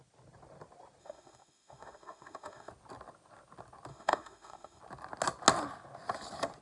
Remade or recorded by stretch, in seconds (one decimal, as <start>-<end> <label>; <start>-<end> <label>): 0.0-1.0 recorded; 1.0-2.7 remade; 2.7-3.9 recorded; 3.9-4.8 remade; 4.8-6.6 recorded